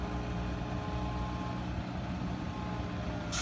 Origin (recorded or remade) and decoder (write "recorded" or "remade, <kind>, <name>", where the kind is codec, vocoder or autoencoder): recorded